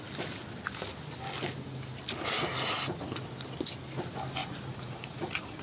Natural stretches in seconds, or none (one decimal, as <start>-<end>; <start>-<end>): 0.0-4.4